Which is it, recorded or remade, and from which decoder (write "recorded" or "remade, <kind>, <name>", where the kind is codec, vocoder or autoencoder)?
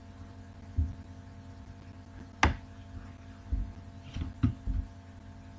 recorded